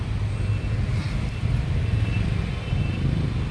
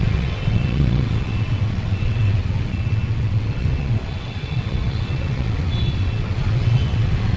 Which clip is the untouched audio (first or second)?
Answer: first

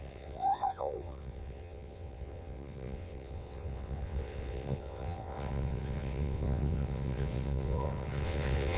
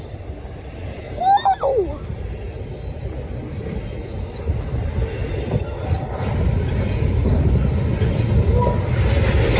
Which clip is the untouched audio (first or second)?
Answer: second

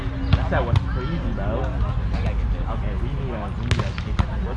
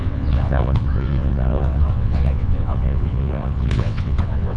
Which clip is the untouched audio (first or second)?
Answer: first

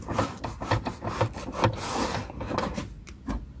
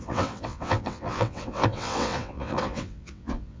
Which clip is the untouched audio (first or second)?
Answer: first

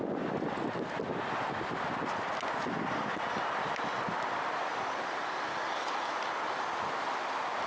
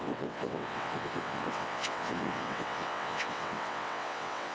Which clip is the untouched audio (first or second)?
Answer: first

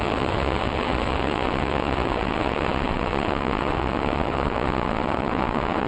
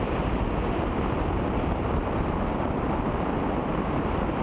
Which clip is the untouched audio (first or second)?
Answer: second